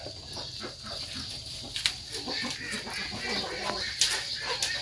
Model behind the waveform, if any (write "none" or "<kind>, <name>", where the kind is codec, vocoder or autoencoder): none